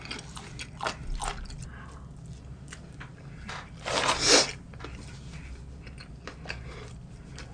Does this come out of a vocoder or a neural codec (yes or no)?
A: no